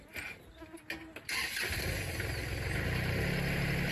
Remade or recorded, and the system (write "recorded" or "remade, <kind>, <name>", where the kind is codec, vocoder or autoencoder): recorded